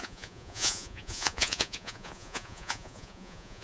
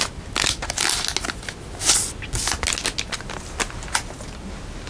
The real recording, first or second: second